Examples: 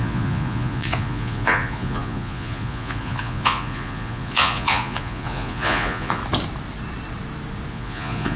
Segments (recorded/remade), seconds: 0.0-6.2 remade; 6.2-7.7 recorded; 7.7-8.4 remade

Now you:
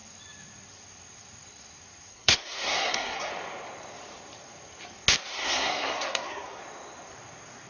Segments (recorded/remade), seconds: 0.0-2.1 recorded; 2.1-3.3 remade; 3.3-5.3 recorded; 5.3-6.6 remade; 6.6-7.7 recorded

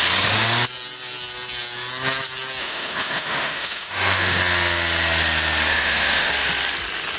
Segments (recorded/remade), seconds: 0.0-2.6 recorded; 2.6-4.4 remade; 4.4-5.7 recorded; 5.7-6.3 remade; 6.3-7.2 recorded